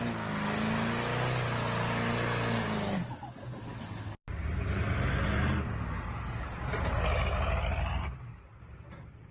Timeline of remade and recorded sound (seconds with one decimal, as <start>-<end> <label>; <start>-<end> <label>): 0.0-9.3 recorded

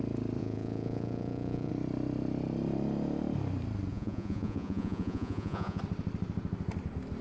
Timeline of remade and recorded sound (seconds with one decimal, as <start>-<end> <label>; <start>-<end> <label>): 0.0-0.4 recorded; 0.4-1.7 remade; 1.7-3.9 recorded; 3.9-5.8 remade; 5.8-7.2 recorded